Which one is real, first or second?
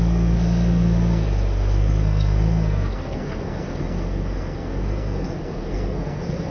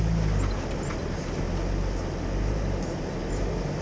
second